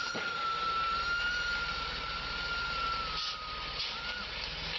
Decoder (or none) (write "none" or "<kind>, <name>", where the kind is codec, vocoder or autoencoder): none